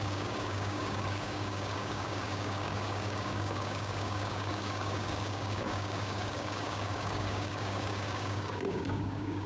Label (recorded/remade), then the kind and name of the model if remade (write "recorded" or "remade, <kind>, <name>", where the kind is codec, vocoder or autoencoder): remade, codec, DAC